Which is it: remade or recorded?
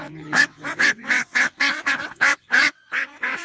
remade